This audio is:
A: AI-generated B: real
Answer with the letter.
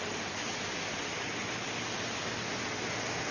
B